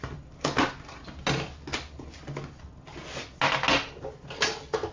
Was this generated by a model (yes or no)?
no